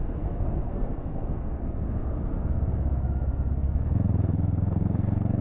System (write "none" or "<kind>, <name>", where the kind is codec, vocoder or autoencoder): codec, SNAC